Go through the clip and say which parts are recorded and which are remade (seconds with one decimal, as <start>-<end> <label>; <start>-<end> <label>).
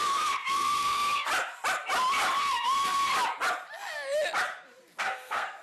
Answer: 0.0-1.3 remade; 1.3-2.4 recorded; 2.4-3.1 remade; 3.1-5.0 recorded; 5.0-5.6 remade